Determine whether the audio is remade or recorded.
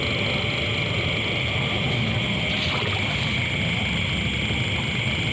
recorded